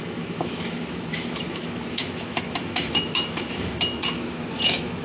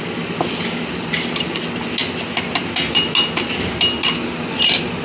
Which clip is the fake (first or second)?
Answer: first